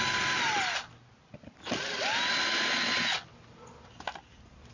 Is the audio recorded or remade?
recorded